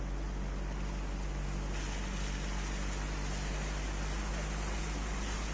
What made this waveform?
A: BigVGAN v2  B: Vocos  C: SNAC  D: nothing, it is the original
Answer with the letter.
D